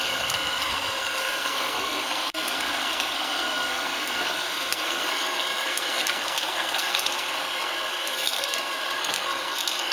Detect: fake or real fake